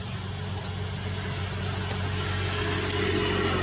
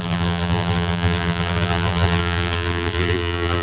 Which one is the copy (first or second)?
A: second